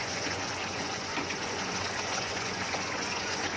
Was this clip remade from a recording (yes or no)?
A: yes